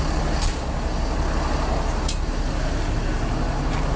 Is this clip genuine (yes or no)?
yes